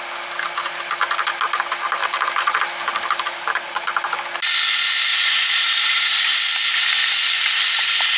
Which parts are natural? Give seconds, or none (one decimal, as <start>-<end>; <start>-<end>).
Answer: 0.0-5.1; 6.1-8.2